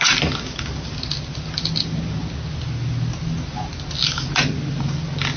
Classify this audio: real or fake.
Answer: real